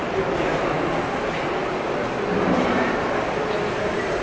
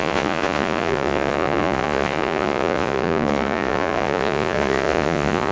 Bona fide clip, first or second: first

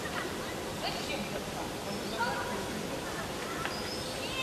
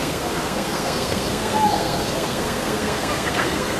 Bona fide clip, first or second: first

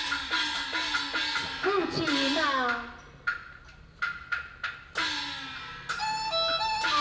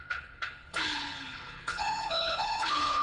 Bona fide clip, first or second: first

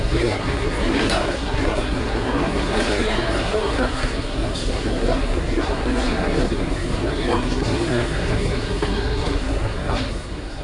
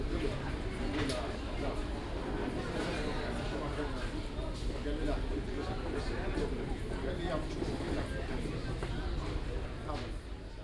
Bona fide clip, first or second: second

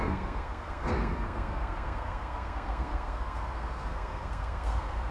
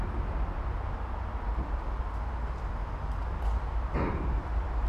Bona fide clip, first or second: second